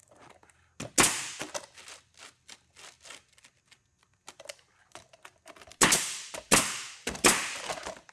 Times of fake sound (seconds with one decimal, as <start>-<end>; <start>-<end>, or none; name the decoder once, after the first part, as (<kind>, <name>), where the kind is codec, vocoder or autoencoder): none